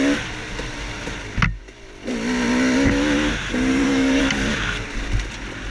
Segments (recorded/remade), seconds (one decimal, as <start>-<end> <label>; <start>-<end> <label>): 0.0-3.7 recorded; 3.7-4.2 remade; 4.2-5.7 recorded